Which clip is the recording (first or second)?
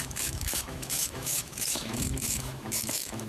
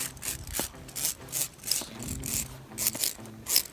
second